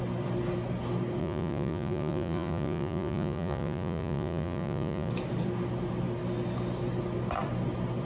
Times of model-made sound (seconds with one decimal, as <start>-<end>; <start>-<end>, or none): 1.2-5.1